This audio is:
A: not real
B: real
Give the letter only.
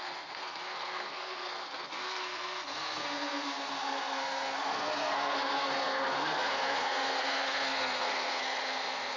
A